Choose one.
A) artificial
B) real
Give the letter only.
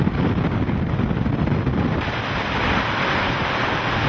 B